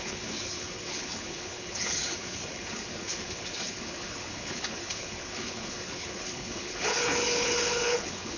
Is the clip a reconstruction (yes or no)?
yes